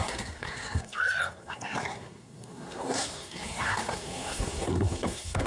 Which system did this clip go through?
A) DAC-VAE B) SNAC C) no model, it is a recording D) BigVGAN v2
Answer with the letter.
B